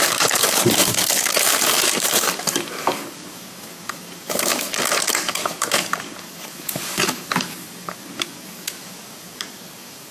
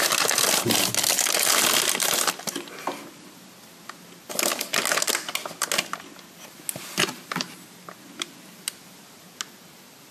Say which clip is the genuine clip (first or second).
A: second